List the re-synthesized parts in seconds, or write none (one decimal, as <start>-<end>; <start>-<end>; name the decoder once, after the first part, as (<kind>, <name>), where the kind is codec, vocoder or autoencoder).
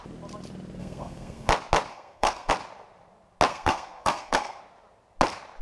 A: 0.8-1.5 (codec, SNAC); 1.9-2.5; 3.5-4.6